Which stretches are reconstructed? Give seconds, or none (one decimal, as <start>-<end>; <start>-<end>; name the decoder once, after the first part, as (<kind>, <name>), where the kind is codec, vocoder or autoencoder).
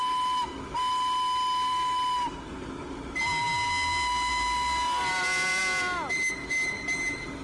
none